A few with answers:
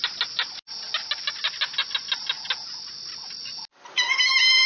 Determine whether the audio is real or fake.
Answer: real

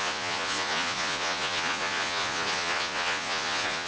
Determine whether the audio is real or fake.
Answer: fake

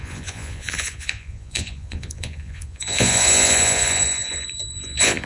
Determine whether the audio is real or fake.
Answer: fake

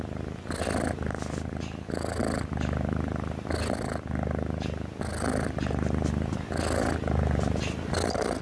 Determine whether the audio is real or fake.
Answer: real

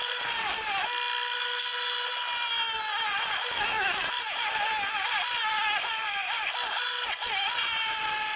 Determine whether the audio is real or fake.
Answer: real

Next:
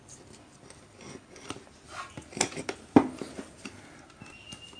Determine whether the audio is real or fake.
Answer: real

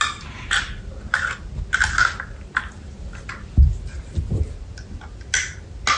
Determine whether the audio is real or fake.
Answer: real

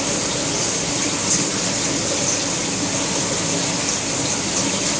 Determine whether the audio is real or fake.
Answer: real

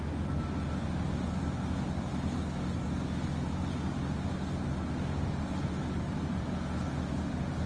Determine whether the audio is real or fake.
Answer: real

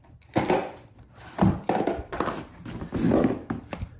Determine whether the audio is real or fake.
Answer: real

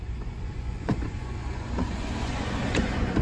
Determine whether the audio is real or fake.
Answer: fake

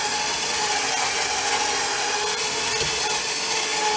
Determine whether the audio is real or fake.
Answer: real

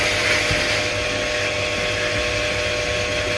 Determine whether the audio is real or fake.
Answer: real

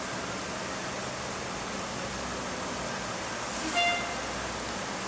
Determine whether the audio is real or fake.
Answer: real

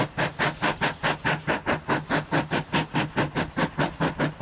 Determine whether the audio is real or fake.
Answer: real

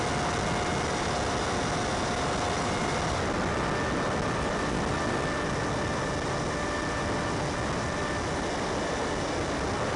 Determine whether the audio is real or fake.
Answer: real